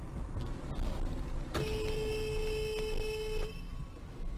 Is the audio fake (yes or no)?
no